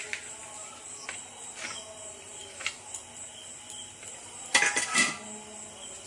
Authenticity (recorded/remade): recorded